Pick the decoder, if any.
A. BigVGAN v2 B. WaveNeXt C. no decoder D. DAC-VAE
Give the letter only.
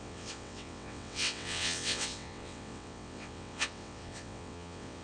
B